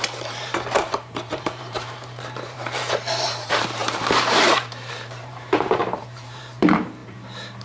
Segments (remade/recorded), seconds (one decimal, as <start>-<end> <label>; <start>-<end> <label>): 0.0-7.6 remade